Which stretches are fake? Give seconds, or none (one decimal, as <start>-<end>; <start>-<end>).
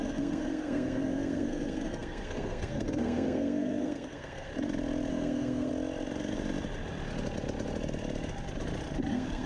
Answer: 0.0-4.5; 5.1-5.7; 9.1-9.5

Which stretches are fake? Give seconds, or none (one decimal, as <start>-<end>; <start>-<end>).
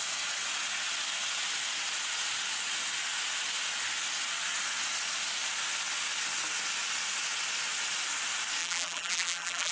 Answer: 8.6-9.7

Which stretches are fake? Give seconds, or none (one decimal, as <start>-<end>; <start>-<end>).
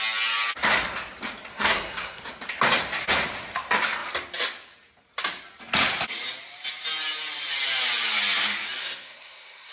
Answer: 1.5-2.3; 8.8-9.7